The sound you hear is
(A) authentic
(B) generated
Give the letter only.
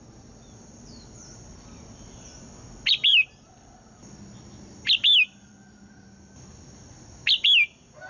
A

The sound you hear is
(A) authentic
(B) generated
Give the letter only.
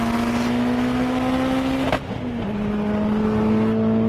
A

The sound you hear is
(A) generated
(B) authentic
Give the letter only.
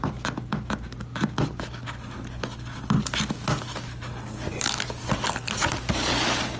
B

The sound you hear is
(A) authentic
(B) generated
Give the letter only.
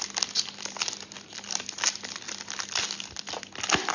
A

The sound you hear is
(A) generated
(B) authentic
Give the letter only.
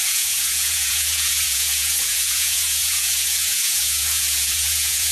A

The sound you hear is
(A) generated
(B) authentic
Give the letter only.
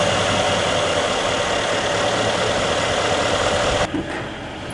B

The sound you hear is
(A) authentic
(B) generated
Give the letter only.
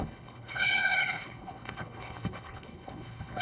B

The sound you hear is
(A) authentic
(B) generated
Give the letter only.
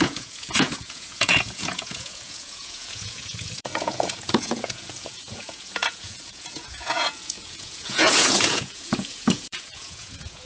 B